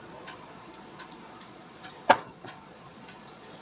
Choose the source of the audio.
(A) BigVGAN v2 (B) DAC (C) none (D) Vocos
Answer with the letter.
D